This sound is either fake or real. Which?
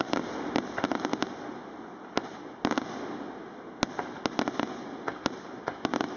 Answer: real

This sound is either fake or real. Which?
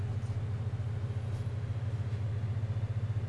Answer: real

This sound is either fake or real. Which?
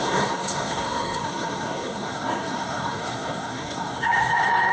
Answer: fake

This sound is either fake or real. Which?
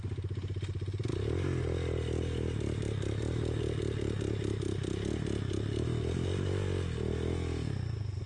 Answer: real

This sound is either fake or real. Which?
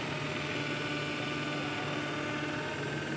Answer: real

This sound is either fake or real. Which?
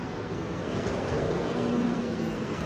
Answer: fake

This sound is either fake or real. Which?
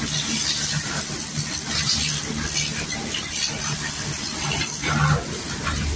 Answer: real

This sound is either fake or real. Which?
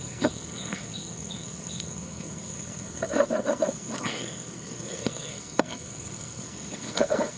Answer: fake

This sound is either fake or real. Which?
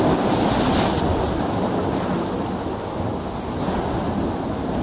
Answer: real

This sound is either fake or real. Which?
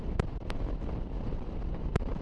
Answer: real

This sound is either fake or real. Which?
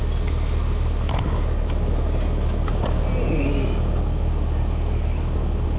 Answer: real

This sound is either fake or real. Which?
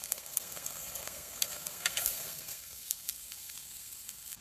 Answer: fake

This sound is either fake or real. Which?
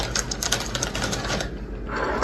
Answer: real